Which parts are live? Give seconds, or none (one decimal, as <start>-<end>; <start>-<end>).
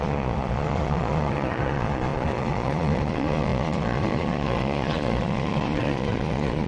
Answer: none